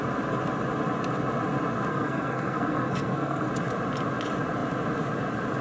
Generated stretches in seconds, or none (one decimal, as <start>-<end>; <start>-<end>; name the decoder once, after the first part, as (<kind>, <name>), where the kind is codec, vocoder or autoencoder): 1.9-3.5 (codec, SNAC)